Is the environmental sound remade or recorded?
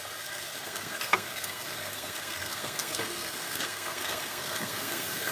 remade